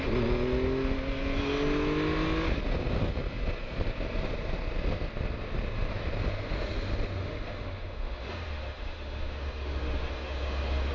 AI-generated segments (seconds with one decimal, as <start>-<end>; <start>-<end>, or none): 7.2-10.9